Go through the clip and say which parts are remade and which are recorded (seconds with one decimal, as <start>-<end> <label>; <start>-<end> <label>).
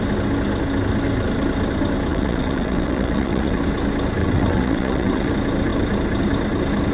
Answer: 0.0-2.1 recorded; 2.1-3.6 remade; 3.6-4.2 recorded; 4.2-5.3 remade; 5.3-6.9 recorded